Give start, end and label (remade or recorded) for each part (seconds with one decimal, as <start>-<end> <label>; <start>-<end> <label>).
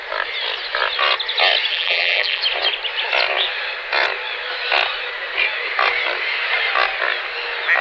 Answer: 0.0-1.7 recorded; 1.7-2.4 remade; 2.4-7.8 recorded